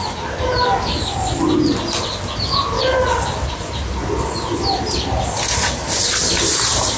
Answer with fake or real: real